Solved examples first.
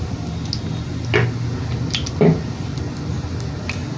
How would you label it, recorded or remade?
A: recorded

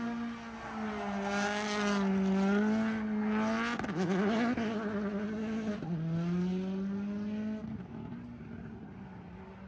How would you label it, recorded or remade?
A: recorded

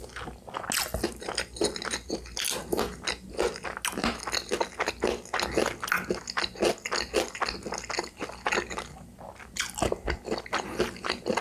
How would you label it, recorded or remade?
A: recorded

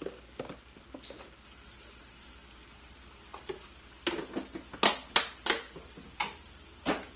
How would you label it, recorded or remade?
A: recorded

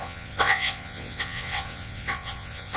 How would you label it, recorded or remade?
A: remade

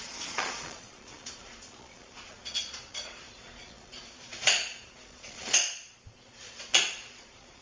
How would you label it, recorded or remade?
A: remade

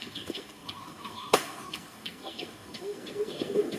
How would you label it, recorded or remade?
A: remade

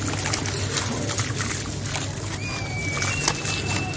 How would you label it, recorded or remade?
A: recorded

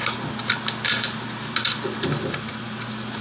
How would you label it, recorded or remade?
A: recorded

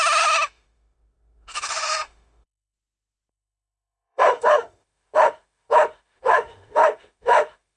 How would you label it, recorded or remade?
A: remade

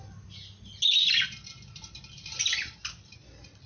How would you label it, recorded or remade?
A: recorded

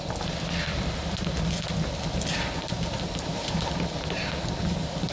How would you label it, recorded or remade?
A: recorded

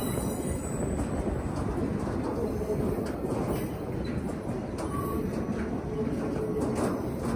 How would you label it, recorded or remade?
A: recorded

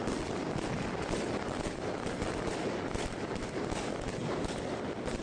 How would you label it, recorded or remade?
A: recorded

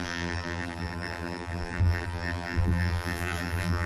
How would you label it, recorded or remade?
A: remade